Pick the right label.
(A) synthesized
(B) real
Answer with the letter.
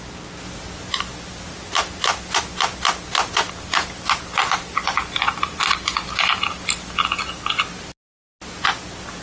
B